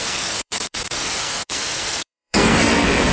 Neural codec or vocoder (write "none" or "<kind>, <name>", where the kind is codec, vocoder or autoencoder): codec, SNAC